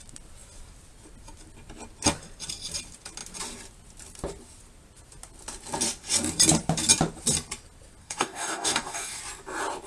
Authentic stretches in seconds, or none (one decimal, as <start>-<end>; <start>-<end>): 0.0-8.0; 9.2-9.9